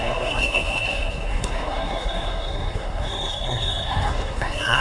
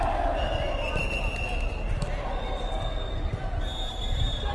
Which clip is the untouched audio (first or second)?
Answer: second